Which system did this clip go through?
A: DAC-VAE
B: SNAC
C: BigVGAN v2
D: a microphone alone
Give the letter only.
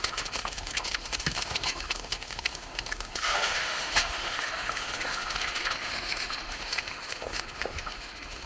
A